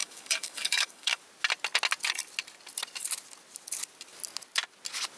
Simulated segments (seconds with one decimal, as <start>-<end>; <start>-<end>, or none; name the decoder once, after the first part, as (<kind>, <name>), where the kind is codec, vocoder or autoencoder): 0.0-1.2 (codec, DAC)